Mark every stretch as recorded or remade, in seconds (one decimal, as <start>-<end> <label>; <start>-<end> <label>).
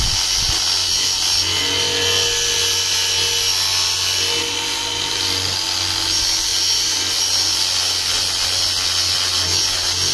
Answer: 0.0-10.1 recorded